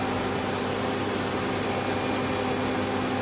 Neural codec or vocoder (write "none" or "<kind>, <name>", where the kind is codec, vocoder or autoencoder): none